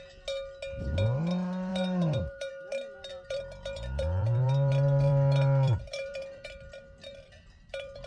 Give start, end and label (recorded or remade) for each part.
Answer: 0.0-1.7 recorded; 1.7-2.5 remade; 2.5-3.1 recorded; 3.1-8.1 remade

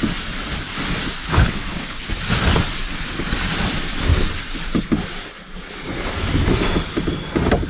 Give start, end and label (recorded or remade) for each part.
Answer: 0.0-1.2 recorded; 1.2-2.1 remade; 2.1-7.7 recorded

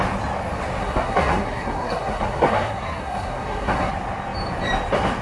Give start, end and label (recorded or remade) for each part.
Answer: 0.0-0.8 recorded; 0.8-3.9 remade; 3.9-5.2 recorded

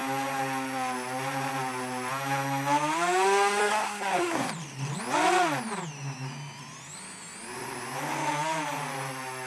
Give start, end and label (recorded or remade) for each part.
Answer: 0.0-3.6 recorded; 3.6-4.5 remade; 4.5-9.5 recorded

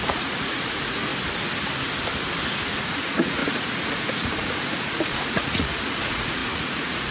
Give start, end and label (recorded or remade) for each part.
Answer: 0.0-1.1 remade; 1.1-2.7 recorded; 2.7-7.1 remade

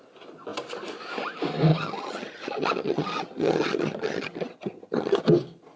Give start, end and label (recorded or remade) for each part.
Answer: 0.0-1.7 recorded; 1.7-5.2 remade; 5.2-5.8 recorded

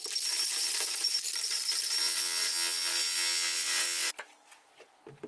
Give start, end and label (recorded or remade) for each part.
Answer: 0.0-2.0 recorded; 2.0-4.1 remade; 4.1-5.3 recorded

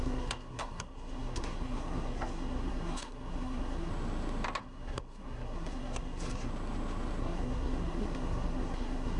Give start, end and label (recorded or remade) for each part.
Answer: 0.0-3.9 remade; 3.9-4.6 recorded; 4.6-6.5 remade; 6.5-7.2 recorded; 7.2-9.2 remade